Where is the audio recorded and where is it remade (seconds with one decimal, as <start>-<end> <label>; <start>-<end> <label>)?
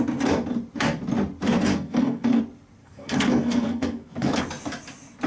0.0-1.7 recorded; 1.7-2.4 remade; 2.4-2.8 recorded; 2.8-4.4 remade; 4.4-5.3 recorded